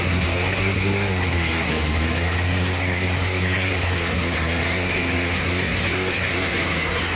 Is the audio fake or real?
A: fake